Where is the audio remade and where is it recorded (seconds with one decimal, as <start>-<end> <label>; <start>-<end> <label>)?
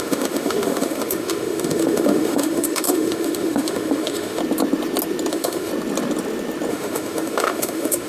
0.0-4.4 remade; 4.4-5.3 recorded; 5.3-5.7 remade; 5.7-6.7 recorded; 6.7-8.1 remade